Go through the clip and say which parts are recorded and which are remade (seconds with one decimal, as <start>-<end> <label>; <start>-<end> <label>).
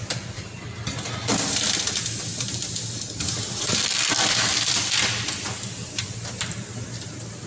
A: 0.0-1.3 remade; 1.3-1.9 recorded; 1.9-2.3 remade; 2.3-4.1 recorded; 4.1-7.5 remade